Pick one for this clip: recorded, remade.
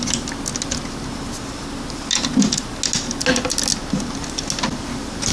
recorded